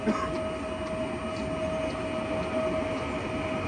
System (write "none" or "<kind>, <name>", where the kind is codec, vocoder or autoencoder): none